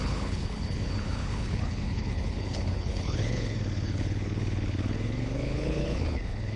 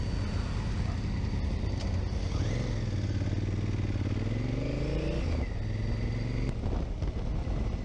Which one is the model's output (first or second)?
first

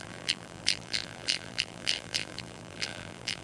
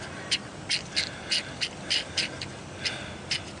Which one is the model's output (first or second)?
first